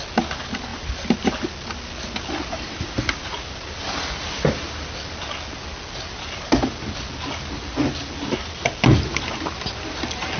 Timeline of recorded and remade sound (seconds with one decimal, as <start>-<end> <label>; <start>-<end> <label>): 0.0-10.4 recorded